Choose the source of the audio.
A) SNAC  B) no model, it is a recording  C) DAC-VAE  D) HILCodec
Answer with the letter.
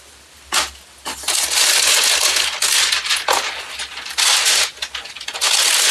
B